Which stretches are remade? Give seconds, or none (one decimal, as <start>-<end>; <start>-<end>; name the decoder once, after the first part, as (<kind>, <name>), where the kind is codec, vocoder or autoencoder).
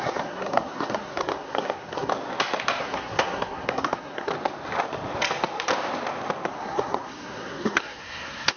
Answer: 0.0-2.1 (codec, SNAC); 2.8-4.3; 6.5-8.6